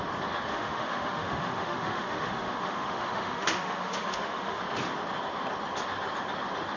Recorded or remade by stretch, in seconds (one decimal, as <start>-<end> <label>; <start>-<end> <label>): 0.0-0.5 recorded; 0.5-4.6 remade; 4.6-6.8 recorded